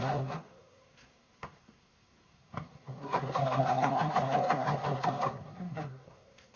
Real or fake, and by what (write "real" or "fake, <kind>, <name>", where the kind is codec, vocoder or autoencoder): fake, codec, SNAC